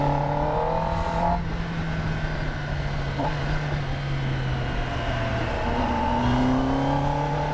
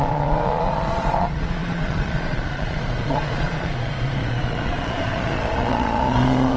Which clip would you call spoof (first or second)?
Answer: second